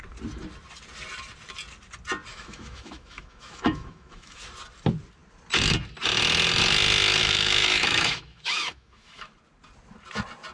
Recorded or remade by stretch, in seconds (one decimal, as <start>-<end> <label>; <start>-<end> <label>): 0.0-2.3 recorded; 2.3-4.4 remade; 4.4-7.2 recorded; 7.2-9.3 remade; 9.3-10.5 recorded